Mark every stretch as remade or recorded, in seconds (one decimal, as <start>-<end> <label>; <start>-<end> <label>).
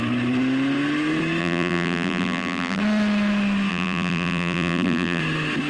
0.0-1.4 recorded; 1.4-2.8 remade; 2.8-3.7 recorded; 3.7-5.2 remade; 5.2-5.7 recorded